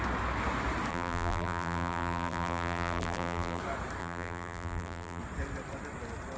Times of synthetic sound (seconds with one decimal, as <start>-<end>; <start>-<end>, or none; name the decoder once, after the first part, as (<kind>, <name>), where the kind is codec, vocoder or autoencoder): 0.9-3.6 (vocoder, BigVGAN v2); 4.0-5.2